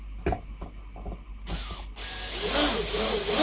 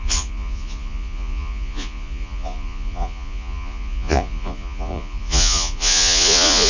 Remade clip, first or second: second